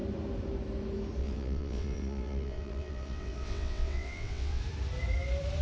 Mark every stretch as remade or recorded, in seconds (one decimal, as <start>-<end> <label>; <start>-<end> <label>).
0.0-1.2 recorded; 1.2-4.6 remade; 4.6-5.6 recorded